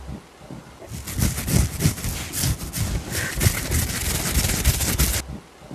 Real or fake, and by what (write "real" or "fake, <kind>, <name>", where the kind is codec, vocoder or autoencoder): real